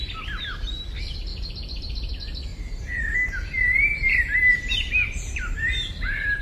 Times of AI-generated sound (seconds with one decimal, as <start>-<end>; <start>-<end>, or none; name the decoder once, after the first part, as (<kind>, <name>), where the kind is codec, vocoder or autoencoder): 1.3-2.1 (vocoder, BigVGAN v2); 2.5-6.4